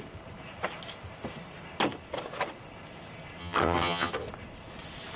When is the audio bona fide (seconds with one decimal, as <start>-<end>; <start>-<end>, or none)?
0.0-3.4; 4.1-5.2